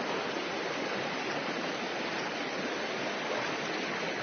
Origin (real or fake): fake